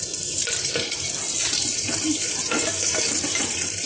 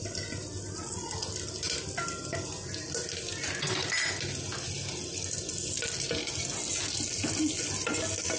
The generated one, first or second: first